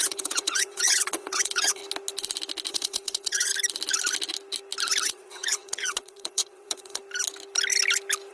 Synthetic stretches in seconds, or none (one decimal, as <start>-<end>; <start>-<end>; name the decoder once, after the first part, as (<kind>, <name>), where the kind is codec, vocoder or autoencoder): 0.0-1.8 (vocoder, WaveNeXt); 2.7-3.5; 5.0-7.0